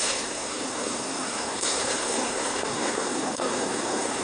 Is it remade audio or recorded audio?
remade